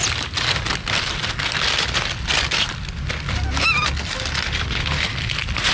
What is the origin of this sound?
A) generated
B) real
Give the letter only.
B